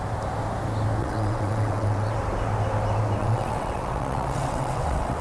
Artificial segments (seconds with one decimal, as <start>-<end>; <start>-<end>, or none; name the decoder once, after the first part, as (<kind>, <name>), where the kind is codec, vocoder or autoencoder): 1.0-2.1 (vocoder, WaveNeXt); 3.2-5.2